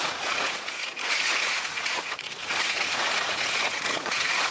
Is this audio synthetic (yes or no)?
yes